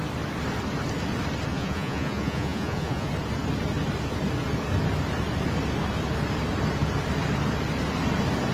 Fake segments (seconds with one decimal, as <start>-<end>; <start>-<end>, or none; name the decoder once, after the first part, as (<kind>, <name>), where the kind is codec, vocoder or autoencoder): 1.5-3.1 (vocoder, Vocos)